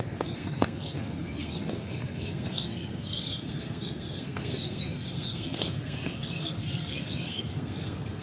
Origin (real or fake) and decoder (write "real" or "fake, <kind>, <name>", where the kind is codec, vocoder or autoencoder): fake, codec, SNAC